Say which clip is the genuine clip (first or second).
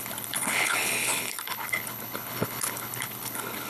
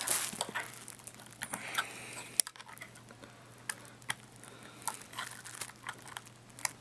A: second